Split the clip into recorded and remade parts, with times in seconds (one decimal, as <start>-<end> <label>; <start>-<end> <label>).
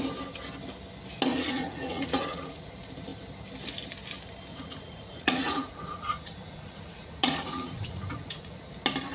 0.0-1.3 recorded; 1.3-2.7 remade; 2.7-4.5 recorded; 4.5-8.6 remade; 8.6-9.1 recorded